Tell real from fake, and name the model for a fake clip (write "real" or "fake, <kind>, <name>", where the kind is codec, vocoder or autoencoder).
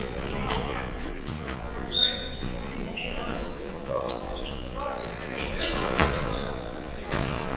fake, vocoder, Vocos